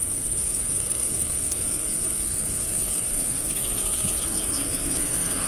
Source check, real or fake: fake